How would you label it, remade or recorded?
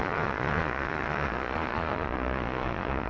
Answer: remade